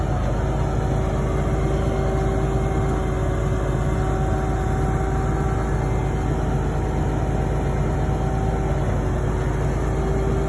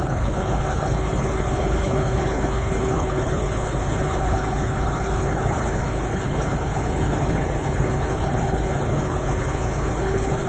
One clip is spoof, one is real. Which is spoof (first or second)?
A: second